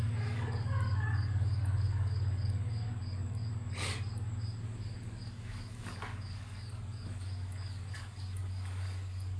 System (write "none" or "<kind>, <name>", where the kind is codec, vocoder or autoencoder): codec, DAC